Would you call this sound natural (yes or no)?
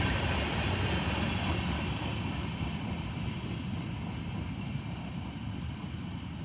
yes